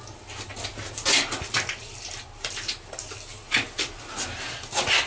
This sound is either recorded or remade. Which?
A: recorded